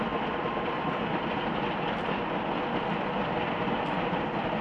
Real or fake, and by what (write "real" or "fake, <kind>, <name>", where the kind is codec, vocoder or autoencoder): real